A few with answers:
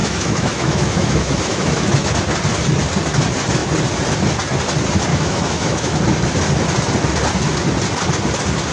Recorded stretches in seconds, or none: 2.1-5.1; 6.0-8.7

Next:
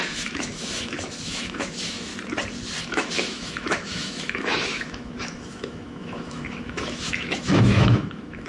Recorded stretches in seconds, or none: 2.1-2.8

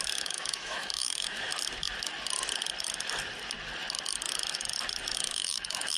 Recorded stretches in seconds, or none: 1.5-5.1

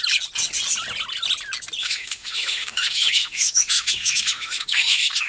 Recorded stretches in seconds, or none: 0.0-1.8

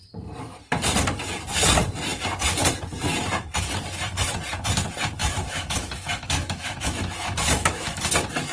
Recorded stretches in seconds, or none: 0.0-5.2; 8.0-8.5

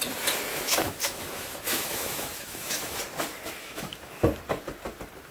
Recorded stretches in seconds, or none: 0.0-0.5; 3.0-3.6; 4.2-5.3